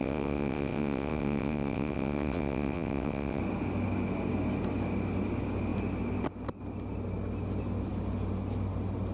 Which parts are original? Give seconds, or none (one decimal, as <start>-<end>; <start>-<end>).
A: 3.4-9.1